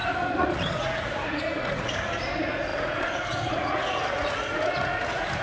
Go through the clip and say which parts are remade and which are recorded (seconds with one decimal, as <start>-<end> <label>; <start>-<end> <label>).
0.0-5.4 remade